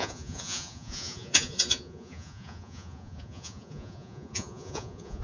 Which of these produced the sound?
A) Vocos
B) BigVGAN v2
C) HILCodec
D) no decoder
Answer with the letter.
A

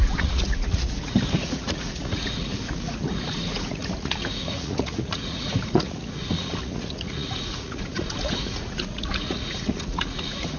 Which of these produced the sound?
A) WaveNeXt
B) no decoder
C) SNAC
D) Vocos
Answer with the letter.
D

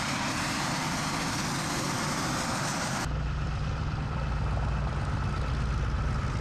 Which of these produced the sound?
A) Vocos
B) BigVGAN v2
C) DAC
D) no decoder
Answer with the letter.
D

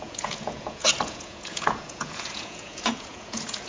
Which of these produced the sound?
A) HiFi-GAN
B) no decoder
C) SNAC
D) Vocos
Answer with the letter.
D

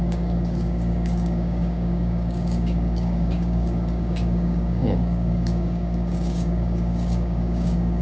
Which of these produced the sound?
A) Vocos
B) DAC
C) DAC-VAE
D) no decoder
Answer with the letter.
B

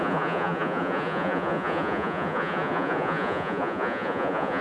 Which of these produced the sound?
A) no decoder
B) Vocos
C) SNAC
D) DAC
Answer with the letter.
B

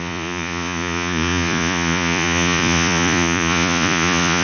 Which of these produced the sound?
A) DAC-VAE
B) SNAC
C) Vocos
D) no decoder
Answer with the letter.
C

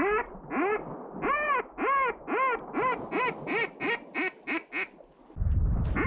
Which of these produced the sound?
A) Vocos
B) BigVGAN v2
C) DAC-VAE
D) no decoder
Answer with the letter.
D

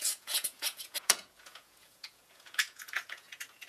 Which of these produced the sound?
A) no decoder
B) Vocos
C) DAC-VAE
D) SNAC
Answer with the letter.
B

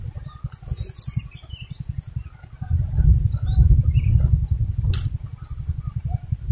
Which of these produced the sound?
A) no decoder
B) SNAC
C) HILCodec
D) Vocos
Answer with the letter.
A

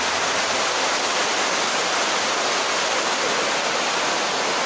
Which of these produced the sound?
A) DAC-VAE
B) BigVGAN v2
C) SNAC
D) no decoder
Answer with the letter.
D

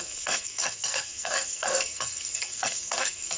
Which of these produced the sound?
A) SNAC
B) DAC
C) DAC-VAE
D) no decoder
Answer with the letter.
A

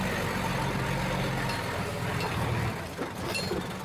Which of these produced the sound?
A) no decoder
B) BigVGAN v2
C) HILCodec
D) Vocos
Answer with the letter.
A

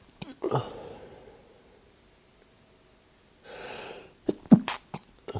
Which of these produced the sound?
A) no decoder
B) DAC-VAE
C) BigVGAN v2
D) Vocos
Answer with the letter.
A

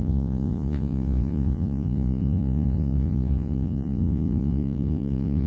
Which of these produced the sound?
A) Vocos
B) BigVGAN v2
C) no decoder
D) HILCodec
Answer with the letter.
A